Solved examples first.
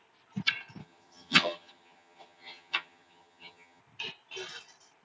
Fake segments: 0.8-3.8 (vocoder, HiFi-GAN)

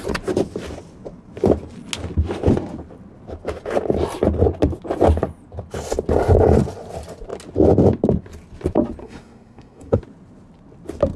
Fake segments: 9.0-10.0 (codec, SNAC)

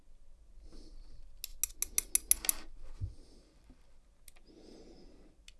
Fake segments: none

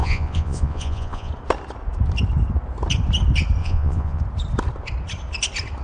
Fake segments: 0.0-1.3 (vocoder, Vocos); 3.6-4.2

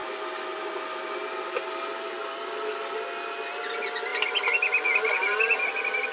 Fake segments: none